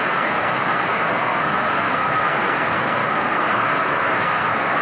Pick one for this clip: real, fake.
fake